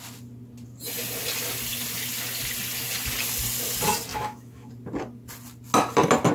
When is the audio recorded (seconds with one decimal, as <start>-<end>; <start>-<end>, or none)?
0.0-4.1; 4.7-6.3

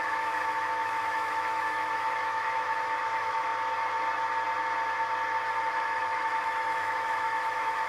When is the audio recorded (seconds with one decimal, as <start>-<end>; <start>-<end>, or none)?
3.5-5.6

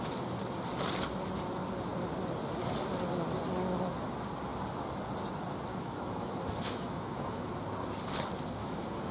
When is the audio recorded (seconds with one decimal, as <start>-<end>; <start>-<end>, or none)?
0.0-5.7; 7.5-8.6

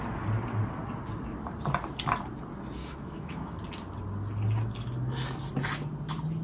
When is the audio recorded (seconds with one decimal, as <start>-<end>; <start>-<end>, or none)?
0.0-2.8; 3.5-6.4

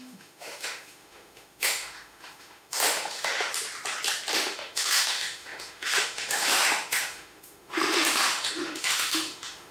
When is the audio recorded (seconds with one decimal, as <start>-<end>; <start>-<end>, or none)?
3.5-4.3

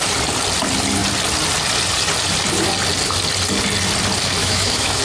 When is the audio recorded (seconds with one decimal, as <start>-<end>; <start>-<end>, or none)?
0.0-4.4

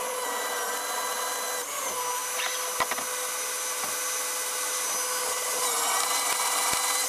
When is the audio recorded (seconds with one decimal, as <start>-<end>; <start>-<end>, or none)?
0.0-7.1

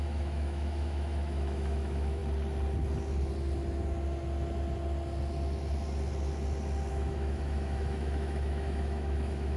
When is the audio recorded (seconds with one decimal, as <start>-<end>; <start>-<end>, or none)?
2.2-6.9